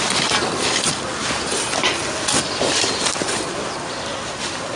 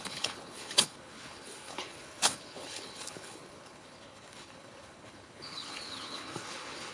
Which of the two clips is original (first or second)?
first